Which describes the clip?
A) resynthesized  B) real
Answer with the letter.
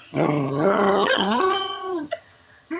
A